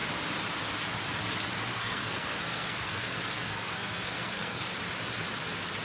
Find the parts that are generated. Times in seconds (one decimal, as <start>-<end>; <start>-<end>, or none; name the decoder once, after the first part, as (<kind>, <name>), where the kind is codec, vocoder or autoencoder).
1.7-4.7 (codec, SNAC)